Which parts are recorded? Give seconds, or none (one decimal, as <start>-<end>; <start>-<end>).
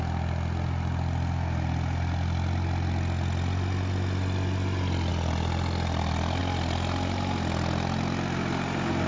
0.0-9.1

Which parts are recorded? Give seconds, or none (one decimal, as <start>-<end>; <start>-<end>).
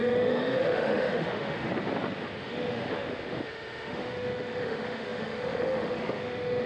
1.7-2.3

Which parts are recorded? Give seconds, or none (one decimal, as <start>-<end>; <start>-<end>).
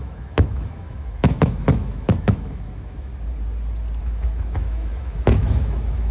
3.1-4.0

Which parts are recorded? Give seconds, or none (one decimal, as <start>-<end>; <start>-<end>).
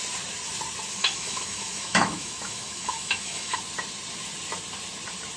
0.0-1.0; 3.6-5.4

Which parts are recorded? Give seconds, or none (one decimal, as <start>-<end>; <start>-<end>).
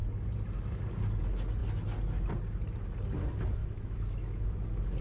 0.0-3.6; 4.4-5.0